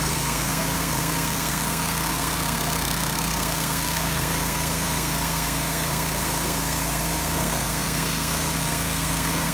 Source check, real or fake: fake